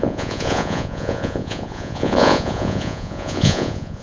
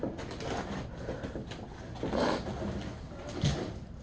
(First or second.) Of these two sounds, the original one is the second